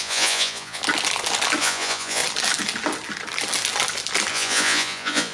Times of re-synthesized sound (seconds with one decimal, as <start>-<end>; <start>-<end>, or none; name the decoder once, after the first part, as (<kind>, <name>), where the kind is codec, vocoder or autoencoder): 0.0-0.8 (vocoder, Vocos); 1.6-2.2; 4.3-5.3